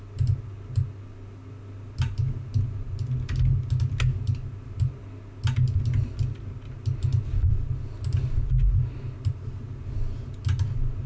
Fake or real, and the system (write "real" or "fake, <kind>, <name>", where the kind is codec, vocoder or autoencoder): real